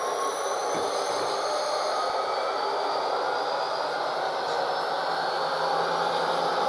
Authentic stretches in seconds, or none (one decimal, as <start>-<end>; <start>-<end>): 0.0-6.7